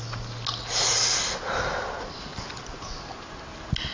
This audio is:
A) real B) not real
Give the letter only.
A